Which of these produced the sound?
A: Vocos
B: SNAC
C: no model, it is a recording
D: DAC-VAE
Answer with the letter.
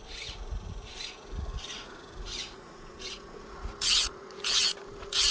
A